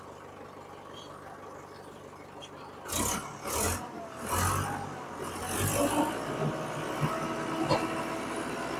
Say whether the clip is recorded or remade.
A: recorded